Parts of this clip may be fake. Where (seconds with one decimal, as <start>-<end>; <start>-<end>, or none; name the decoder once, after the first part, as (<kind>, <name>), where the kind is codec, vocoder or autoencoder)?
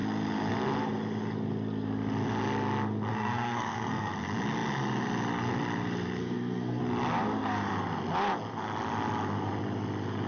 3.1-4.1 (codec, SNAC); 6.2-6.8